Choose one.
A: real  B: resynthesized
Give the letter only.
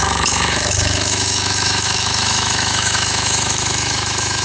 B